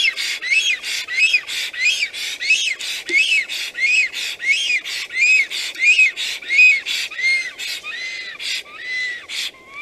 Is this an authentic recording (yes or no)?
yes